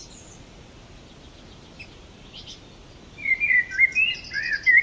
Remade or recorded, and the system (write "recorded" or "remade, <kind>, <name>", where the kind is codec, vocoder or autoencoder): recorded